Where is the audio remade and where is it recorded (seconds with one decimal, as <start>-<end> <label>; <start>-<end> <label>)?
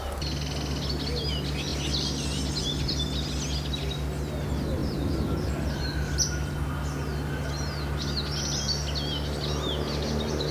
0.0-10.5 recorded